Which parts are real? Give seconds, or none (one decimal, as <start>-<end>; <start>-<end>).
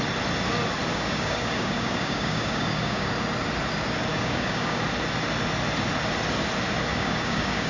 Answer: 0.0-0.9; 3.1-4.1; 4.8-6.9